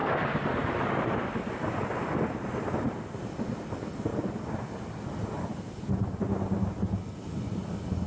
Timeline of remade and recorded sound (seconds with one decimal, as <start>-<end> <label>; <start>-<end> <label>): 0.0-8.1 recorded